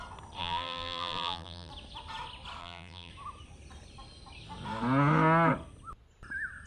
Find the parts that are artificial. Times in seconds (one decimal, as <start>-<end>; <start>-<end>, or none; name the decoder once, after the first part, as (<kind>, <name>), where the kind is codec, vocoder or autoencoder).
0.4-1.7 (vocoder, BigVGAN v2); 2.6-3.1